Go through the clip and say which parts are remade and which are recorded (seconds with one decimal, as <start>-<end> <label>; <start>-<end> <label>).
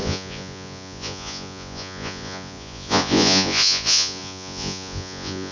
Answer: 0.0-5.5 remade